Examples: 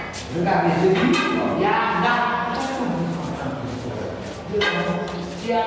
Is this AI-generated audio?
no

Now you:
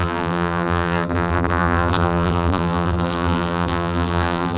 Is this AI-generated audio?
yes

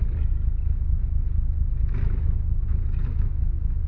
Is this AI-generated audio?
no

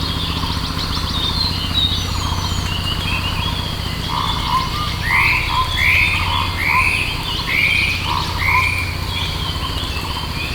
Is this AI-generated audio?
no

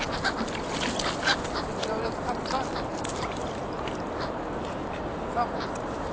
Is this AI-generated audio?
yes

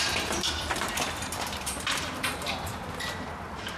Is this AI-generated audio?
yes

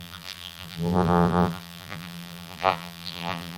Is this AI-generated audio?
yes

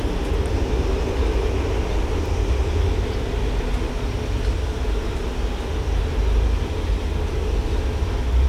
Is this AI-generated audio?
no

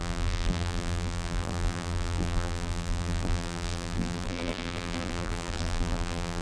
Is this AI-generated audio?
yes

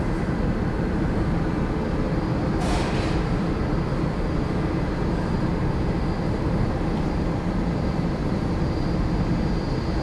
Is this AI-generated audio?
yes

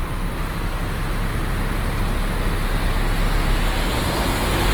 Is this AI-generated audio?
no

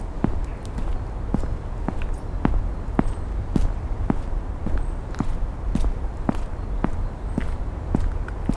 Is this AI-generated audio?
no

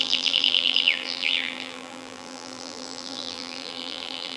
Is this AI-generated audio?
yes